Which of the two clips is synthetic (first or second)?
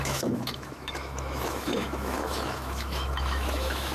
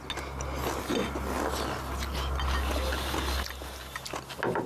first